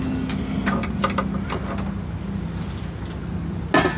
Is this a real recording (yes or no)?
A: yes